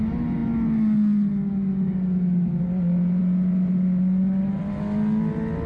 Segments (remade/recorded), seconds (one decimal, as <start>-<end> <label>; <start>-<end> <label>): 0.0-5.7 recorded